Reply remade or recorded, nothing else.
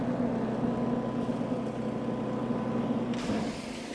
recorded